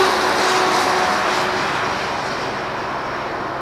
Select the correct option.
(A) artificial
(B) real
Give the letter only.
B